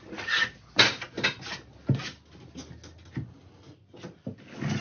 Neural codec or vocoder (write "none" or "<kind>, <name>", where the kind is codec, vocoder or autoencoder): none